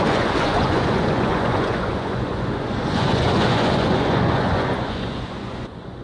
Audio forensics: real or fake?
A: fake